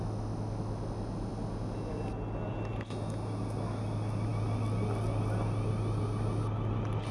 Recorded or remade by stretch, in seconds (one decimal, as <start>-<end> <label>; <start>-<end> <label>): 0.0-7.1 recorded